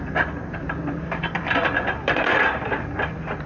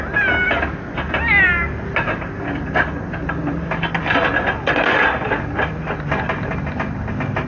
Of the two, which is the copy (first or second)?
first